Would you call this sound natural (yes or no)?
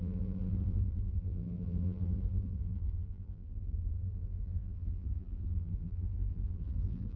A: no